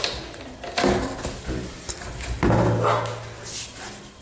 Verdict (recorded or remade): recorded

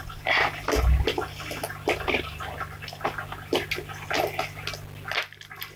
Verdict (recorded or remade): recorded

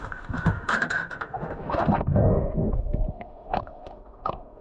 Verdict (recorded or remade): remade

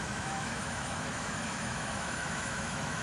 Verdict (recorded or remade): remade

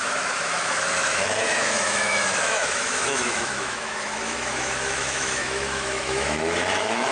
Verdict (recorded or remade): remade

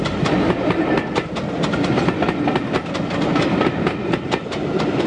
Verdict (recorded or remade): recorded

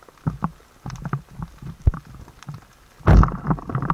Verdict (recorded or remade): recorded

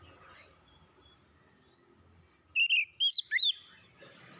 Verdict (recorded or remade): recorded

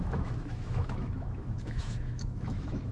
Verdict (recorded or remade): remade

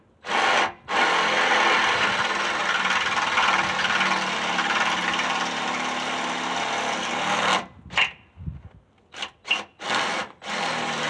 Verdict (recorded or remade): recorded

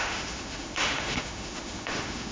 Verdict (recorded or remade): remade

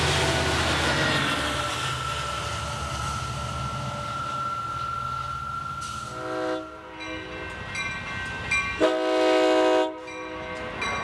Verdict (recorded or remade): recorded